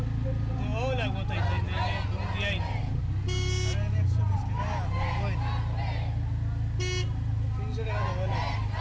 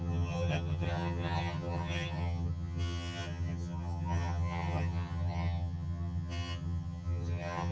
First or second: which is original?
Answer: first